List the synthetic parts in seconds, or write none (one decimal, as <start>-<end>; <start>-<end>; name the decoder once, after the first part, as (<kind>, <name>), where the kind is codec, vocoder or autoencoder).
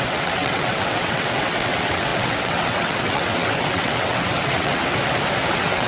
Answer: 0.0-4.8 (vocoder, WaveNeXt); 5.5-5.9